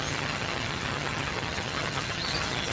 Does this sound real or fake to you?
fake